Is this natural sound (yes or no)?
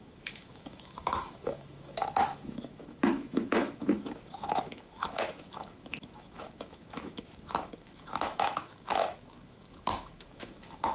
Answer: no